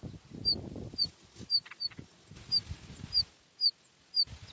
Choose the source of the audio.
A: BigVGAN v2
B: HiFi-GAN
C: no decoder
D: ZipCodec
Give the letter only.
C